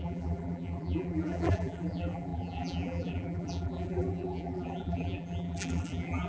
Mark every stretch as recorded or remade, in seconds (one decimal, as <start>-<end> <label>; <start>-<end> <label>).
0.0-6.3 remade